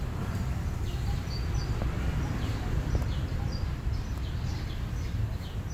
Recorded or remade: remade